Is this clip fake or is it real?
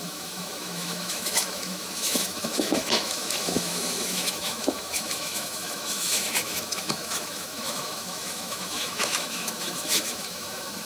fake